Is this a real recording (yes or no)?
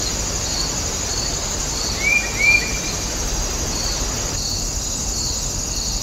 yes